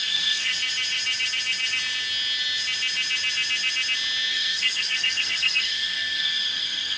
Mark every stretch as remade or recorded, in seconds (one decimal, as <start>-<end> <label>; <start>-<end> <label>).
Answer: 0.0-0.5 remade; 0.5-4.3 recorded; 4.3-7.0 remade